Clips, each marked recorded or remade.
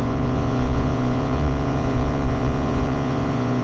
remade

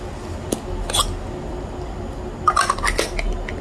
recorded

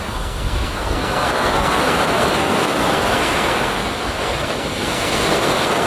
remade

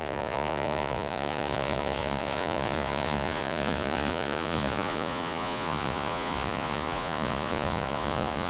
remade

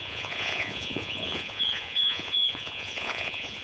remade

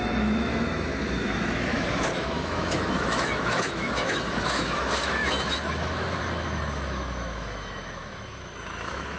remade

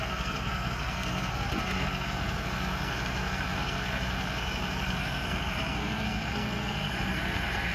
remade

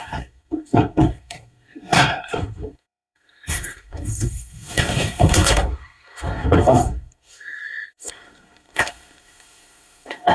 remade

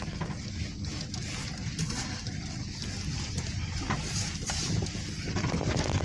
recorded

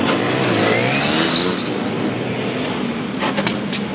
recorded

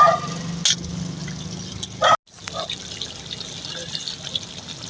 recorded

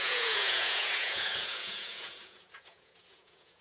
remade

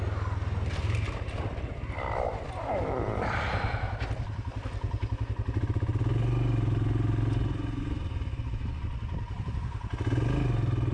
recorded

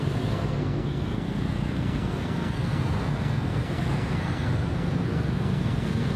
remade